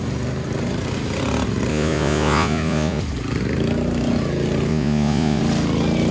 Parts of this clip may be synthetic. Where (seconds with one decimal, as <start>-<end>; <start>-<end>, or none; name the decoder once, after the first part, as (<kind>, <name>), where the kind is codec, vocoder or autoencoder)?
1.7-3.0 (vocoder, Vocos); 4.7-5.4